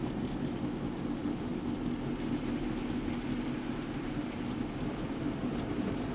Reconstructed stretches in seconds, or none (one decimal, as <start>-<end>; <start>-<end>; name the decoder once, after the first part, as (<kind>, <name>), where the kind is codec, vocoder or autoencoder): none